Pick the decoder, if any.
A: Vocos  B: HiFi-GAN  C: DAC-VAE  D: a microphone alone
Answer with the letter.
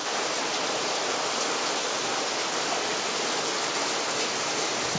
D